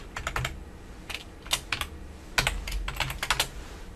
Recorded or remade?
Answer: recorded